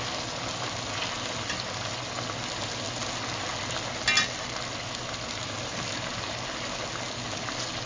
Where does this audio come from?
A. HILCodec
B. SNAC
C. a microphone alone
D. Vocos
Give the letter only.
C